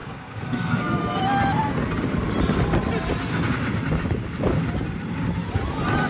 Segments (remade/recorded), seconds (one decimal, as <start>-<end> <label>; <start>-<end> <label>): 0.0-1.2 remade; 1.2-6.1 recorded